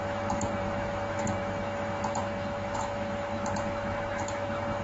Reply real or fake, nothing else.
fake